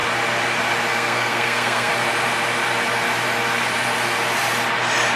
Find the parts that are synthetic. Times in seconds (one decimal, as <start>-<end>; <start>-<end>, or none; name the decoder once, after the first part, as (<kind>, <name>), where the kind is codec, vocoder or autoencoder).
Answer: 0.9-1.9 (codec, SNAC)